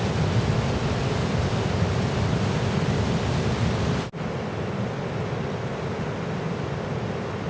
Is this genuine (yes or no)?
yes